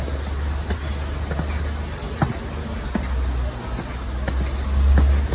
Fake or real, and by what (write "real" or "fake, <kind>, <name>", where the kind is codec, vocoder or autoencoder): real